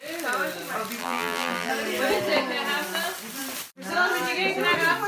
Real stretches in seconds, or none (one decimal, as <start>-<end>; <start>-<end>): 0.0-1.0; 1.7-5.1